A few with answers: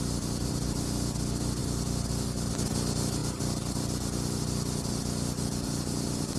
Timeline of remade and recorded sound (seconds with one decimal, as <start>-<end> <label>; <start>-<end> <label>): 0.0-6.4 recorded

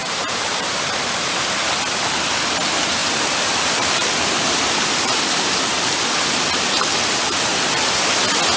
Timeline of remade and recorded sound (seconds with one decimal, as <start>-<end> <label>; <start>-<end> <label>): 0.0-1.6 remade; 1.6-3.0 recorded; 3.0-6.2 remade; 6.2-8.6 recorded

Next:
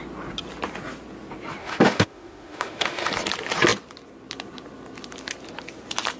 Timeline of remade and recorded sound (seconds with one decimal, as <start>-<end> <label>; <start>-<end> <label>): 0.0-1.6 recorded; 1.6-3.1 remade; 3.1-6.2 recorded